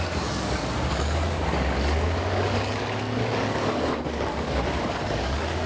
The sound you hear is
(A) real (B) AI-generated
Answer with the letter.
B